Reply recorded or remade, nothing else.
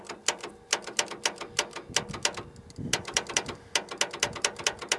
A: recorded